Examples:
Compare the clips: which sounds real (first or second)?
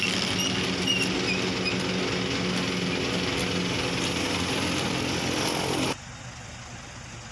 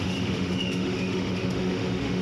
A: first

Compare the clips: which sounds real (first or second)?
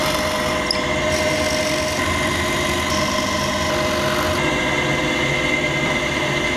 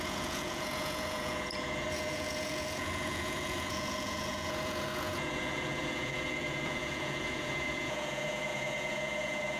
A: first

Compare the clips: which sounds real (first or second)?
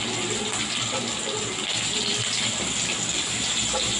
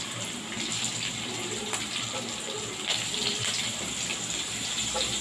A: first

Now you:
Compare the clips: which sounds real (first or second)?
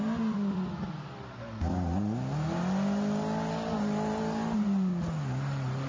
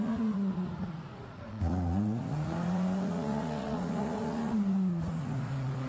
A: first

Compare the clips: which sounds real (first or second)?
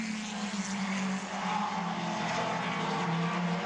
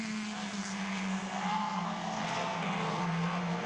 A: first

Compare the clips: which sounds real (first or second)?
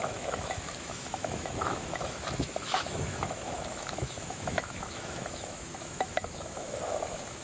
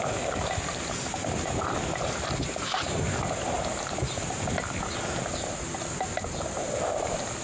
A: second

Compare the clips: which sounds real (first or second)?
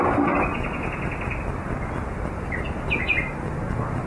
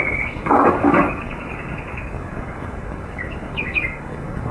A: first